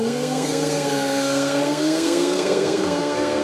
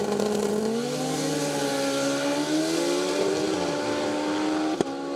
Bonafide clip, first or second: second